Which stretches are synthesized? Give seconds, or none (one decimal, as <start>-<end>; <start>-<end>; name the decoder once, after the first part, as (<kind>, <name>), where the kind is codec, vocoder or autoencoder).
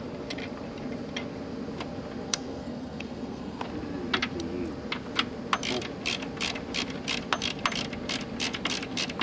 2.3-3.6 (codec, SNAC)